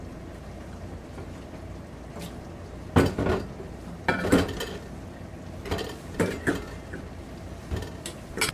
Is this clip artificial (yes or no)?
no